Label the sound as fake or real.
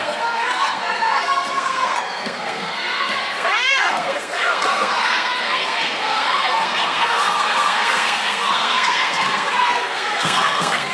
fake